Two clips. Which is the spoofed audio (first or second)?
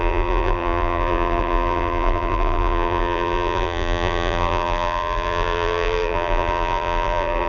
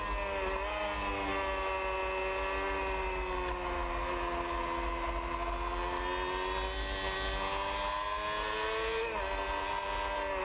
first